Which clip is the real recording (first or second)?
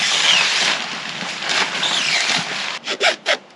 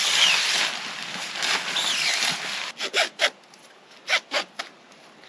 second